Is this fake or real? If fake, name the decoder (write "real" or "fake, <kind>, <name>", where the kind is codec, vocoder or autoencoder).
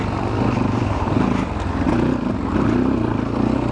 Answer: real